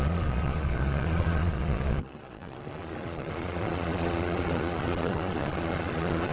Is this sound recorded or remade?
remade